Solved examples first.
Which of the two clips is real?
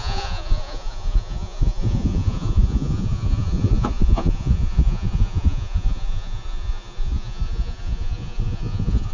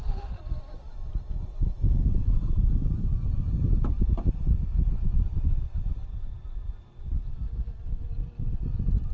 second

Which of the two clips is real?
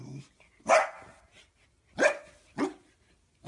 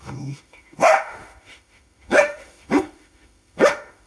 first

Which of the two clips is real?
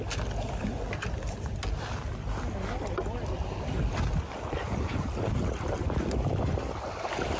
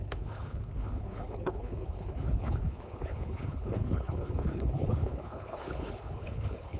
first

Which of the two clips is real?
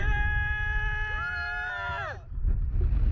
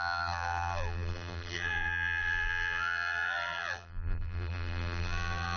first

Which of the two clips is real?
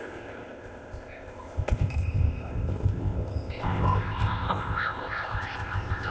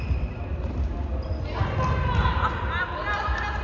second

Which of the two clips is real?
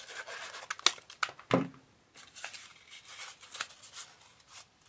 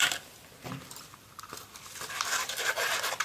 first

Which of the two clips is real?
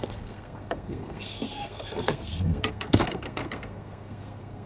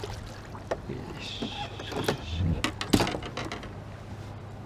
second